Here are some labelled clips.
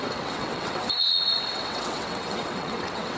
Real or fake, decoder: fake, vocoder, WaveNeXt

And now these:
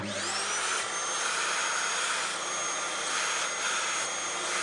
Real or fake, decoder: real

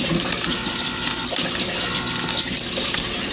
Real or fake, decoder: real